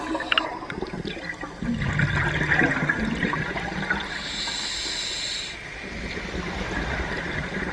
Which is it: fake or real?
real